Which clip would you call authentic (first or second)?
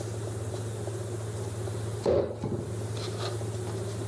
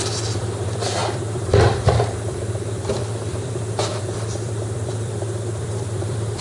first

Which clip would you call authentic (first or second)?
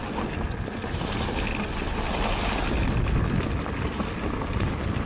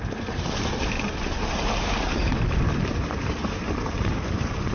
first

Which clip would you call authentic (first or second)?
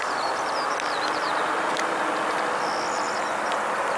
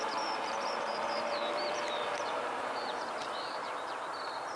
first